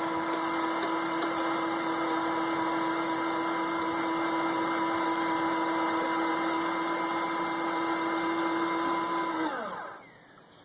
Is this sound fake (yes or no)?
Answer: no